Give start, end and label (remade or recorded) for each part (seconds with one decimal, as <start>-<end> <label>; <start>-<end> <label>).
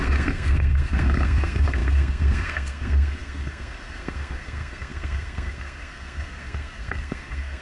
0.0-7.6 remade